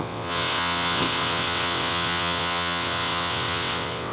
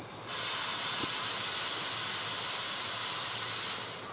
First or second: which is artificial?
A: first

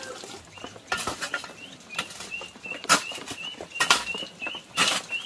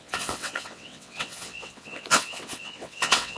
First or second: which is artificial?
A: second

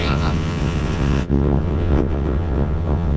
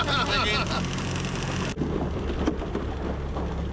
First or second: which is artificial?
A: first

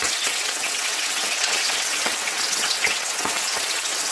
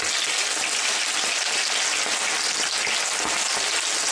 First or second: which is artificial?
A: first